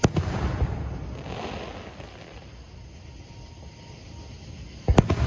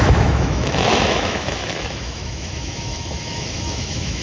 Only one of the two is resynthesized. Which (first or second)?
second